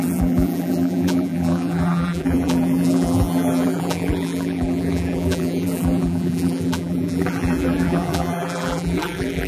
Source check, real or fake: fake